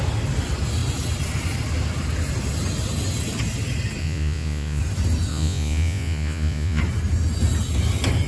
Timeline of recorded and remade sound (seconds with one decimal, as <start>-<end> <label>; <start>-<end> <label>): 0.0-4.0 recorded; 4.0-4.8 remade; 4.8-5.3 recorded; 5.3-6.8 remade; 6.8-8.3 recorded